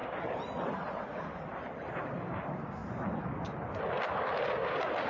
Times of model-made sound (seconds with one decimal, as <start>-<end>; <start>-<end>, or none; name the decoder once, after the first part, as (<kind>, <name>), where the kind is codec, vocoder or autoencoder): none